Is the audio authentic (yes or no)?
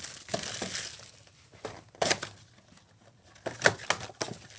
yes